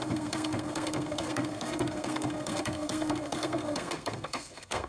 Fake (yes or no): yes